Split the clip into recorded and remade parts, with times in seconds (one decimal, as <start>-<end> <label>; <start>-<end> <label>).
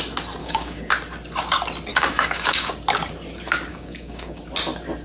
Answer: 0.0-0.4 recorded; 0.4-0.9 remade; 0.9-1.9 recorded; 1.9-2.7 remade; 2.7-3.7 recorded; 3.7-4.4 remade; 4.4-5.0 recorded